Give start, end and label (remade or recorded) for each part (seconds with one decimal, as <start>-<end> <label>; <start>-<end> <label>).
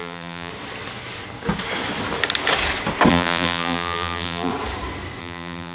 0.0-0.5 remade; 0.5-3.1 recorded; 3.1-4.5 remade; 4.5-5.2 recorded; 5.2-5.7 remade